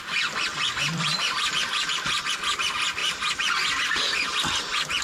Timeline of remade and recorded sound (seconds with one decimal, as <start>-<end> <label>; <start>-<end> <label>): 0.0-0.5 recorded; 0.5-2.3 remade; 2.3-3.0 recorded; 3.0-4.5 remade; 4.5-5.0 recorded